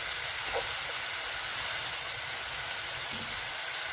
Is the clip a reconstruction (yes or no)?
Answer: no